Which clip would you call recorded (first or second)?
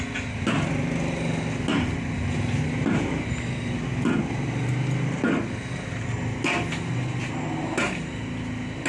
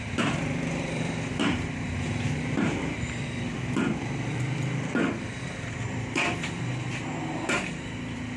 first